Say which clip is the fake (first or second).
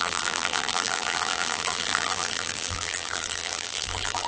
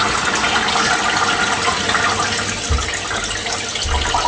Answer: first